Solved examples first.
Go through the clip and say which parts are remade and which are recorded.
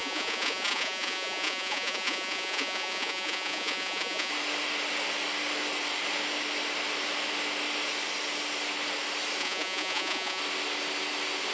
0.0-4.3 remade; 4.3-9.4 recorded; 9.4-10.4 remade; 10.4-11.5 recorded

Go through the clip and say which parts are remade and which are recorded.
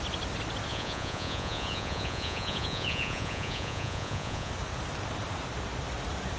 0.0-0.7 recorded; 0.7-4.5 remade; 4.5-6.4 recorded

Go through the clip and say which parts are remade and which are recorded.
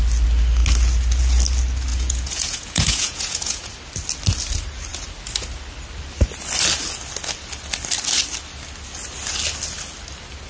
0.0-1.9 recorded; 1.9-3.7 remade; 3.7-10.5 recorded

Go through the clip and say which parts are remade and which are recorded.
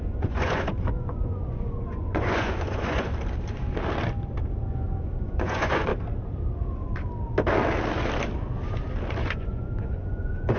0.0-3.1 remade; 3.1-4.6 recorded; 4.6-5.9 remade; 5.9-9.2 recorded; 9.2-10.6 remade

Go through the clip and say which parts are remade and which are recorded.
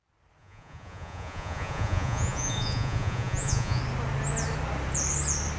0.0-0.4 recorded; 0.4-3.8 remade; 3.8-5.6 recorded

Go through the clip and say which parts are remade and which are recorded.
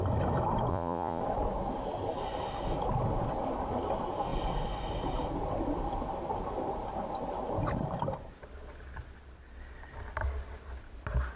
0.0-0.7 recorded; 0.7-1.2 remade; 1.2-11.4 recorded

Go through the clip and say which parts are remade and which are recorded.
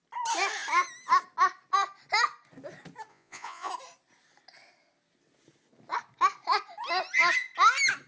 0.0-3.1 recorded; 3.1-3.7 remade; 3.7-8.1 recorded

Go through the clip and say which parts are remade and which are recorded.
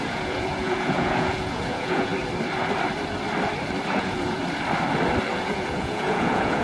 0.0-2.1 remade; 2.1-3.9 recorded; 3.9-4.4 remade; 4.4-5.4 recorded; 5.4-6.6 remade